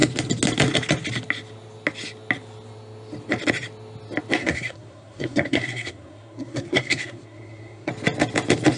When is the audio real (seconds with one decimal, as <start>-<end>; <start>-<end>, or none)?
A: 0.0-4.4; 7.9-8.8